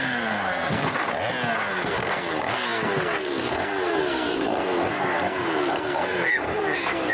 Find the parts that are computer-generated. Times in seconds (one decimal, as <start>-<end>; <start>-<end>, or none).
0.0-1.0; 1.7-7.1